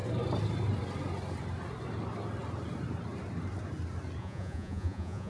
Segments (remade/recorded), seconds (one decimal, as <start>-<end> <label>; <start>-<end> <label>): 0.0-4.2 recorded; 4.2-5.3 remade